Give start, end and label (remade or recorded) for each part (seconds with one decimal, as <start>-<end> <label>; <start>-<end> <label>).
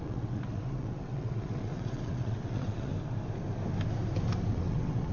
0.0-2.9 remade; 2.9-4.5 recorded; 4.5-5.1 remade